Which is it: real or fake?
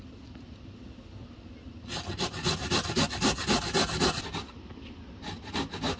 real